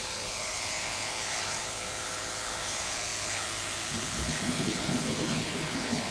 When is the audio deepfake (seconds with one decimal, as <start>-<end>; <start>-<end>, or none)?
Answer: 0.0-6.1